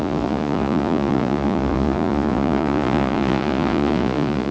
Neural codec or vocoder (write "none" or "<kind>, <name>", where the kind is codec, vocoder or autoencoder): vocoder, Vocos